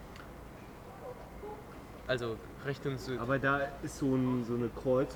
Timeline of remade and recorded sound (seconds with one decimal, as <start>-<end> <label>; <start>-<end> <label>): 0.0-5.2 recorded